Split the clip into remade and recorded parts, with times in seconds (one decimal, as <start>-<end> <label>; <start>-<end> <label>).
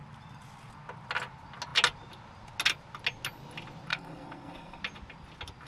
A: 0.0-3.9 recorded; 3.9-4.8 remade; 4.8-5.7 recorded